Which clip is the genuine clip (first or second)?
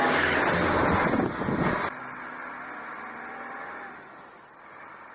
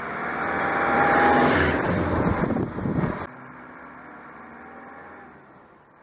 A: first